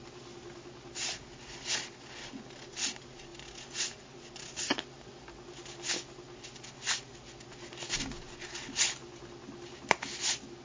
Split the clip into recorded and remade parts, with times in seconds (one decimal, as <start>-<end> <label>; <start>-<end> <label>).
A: 0.0-10.6 recorded